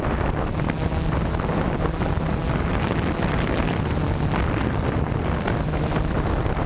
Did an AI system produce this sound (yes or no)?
no